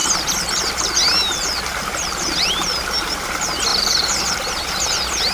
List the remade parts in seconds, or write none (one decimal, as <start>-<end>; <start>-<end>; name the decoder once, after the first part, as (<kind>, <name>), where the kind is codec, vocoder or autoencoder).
3.7-4.2 (vocoder, BigVGAN v2)